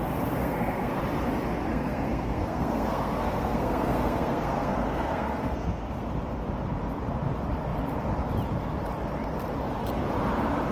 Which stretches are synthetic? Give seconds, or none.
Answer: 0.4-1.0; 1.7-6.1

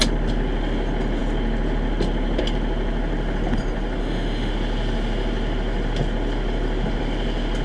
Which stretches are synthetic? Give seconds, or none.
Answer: 4.0-4.5

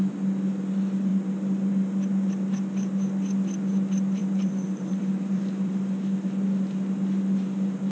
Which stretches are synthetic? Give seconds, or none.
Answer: 4.2-5.7

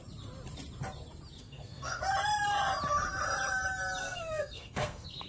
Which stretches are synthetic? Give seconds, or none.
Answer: 1.4-2.0; 4.0-5.3

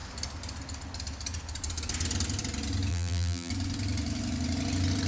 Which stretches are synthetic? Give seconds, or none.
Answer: 2.9-3.5

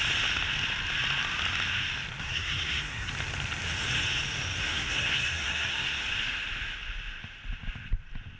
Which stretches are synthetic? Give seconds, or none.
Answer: 2.2-3.1; 4.6-6.0